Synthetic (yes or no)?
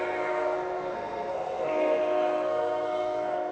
yes